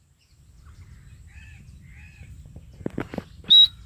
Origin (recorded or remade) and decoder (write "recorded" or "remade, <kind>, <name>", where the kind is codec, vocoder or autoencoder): recorded